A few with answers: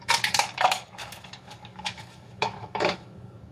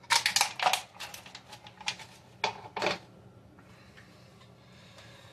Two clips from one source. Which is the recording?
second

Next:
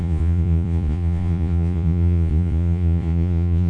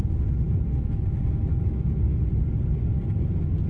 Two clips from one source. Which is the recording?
second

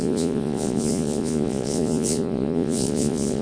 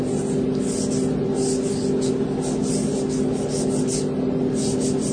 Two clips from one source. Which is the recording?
second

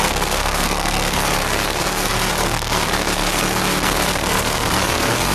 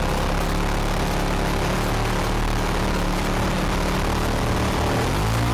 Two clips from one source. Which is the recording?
second